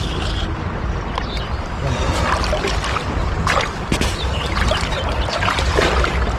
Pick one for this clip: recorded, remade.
recorded